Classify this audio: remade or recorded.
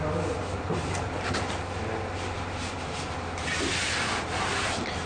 recorded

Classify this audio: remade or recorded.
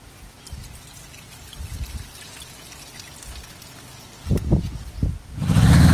recorded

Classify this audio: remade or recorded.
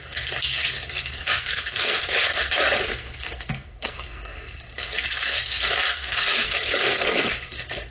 remade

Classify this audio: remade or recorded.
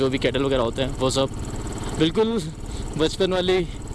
recorded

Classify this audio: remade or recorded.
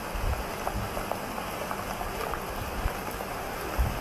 recorded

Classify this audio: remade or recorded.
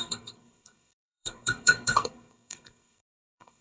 remade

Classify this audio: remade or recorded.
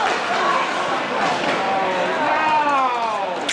recorded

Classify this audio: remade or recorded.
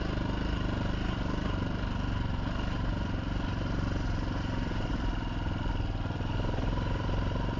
recorded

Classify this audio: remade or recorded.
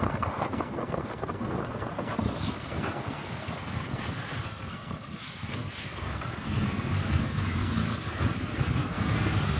remade